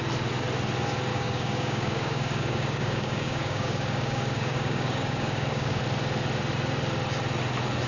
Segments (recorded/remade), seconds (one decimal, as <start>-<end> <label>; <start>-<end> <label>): 0.0-1.1 recorded; 1.1-5.8 remade; 5.8-7.9 recorded